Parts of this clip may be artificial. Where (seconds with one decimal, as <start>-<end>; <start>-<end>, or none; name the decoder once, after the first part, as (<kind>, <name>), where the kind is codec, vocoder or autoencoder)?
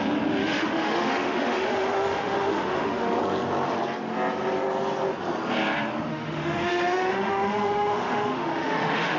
0.4-3.2 (autoencoder, DAC-VAE); 6.1-9.2